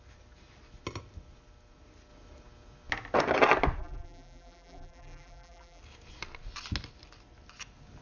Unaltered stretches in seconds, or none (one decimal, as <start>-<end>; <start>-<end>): 0.0-3.8; 5.8-8.0